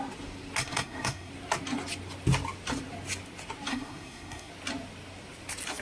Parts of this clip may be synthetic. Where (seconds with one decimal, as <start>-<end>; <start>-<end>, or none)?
0.6-1.3; 3.7-4.5